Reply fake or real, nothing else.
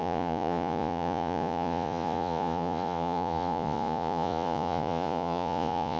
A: fake